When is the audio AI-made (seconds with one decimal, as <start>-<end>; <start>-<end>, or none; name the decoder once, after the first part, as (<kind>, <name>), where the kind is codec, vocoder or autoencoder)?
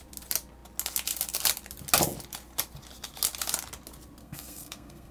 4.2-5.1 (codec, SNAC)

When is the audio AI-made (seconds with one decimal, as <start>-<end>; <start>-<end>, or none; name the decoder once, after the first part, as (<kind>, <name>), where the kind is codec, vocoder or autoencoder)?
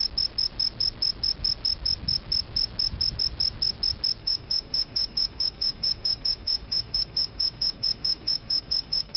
4.2-9.2 (autoencoder, DAC-VAE)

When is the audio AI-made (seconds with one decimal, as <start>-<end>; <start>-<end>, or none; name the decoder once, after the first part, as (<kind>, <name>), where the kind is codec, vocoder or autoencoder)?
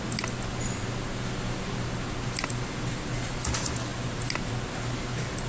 none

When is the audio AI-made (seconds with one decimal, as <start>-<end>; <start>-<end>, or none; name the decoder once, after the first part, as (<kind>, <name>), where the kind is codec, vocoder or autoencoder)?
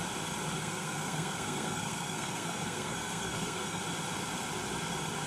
0.6-3.8 (codec, SNAC)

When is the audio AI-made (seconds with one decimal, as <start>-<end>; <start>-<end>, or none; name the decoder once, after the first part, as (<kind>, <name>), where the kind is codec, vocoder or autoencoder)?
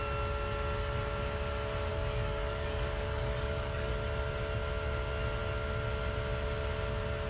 1.9-3.9 (codec, DAC)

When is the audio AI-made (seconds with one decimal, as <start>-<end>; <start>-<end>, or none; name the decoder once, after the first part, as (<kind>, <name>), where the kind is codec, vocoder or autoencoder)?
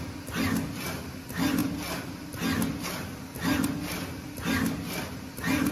none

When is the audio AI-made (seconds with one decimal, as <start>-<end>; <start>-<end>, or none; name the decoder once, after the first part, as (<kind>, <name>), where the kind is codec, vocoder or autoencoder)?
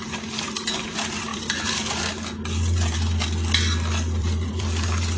1.3-2.1 (vocoder, BigVGAN v2); 4.2-5.2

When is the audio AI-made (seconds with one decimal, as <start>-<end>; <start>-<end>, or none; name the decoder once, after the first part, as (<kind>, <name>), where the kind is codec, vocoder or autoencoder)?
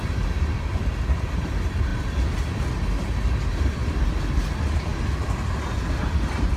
0.0-1.9 (vocoder, BigVGAN v2); 3.5-6.6